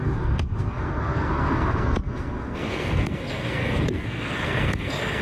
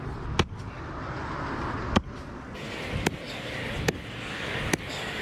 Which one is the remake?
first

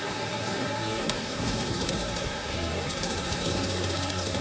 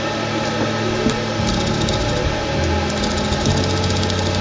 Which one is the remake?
first